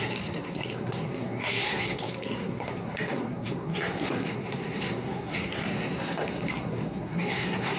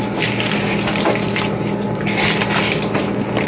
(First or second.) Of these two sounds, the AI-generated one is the first